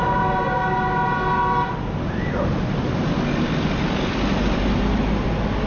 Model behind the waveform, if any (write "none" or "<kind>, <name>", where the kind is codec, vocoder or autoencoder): none